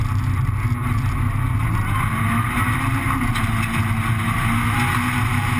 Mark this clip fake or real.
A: real